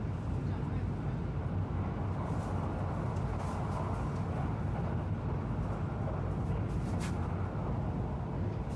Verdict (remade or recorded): recorded